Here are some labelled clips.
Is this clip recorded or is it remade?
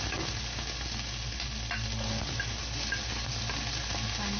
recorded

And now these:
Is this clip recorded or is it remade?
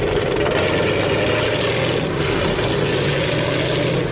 recorded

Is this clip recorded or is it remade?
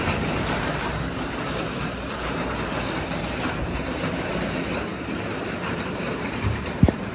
remade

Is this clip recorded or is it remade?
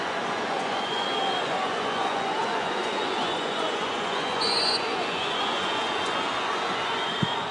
remade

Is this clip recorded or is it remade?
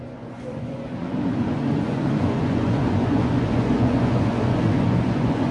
remade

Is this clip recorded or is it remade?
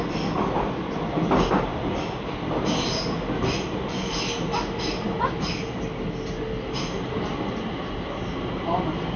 recorded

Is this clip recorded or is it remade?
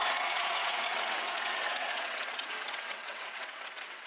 remade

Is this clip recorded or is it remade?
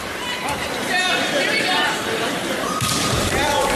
remade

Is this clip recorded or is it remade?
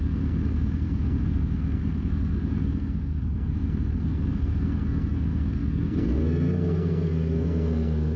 remade